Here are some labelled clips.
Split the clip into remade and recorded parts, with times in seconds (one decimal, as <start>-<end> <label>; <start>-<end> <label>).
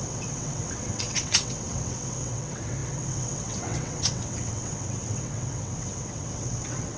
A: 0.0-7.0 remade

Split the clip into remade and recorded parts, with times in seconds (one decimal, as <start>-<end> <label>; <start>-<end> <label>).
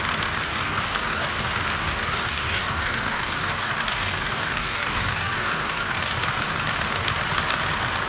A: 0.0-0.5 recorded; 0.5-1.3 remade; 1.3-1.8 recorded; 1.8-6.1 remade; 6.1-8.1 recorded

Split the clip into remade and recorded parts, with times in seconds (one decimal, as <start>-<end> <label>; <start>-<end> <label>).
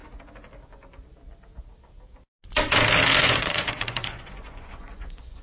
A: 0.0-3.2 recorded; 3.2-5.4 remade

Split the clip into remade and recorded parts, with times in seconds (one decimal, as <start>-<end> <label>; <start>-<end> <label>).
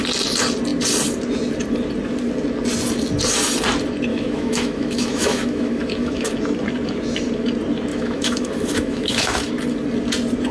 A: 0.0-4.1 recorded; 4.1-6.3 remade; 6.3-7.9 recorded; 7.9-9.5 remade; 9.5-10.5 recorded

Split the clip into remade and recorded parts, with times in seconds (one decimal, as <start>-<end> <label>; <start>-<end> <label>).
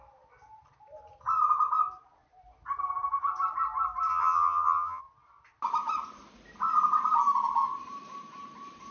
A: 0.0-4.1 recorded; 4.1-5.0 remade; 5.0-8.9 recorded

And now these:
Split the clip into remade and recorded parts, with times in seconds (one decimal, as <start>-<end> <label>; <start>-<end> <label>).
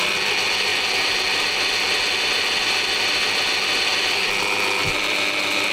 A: 0.0-5.7 recorded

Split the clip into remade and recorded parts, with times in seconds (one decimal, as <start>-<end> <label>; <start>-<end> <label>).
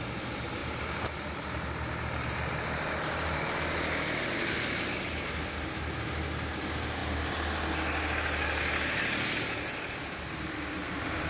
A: 0.0-11.3 recorded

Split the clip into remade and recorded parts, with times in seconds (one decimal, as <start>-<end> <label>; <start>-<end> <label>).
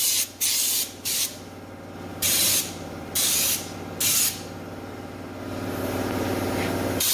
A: 0.0-2.1 recorded; 2.1-3.4 remade; 3.4-7.1 recorded